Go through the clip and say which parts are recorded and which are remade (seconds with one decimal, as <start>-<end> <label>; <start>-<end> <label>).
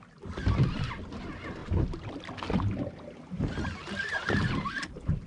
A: 0.0-5.3 recorded